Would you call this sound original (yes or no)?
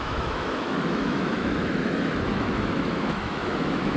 no